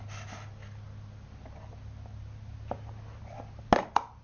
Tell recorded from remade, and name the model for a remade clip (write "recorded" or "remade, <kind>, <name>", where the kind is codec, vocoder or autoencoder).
recorded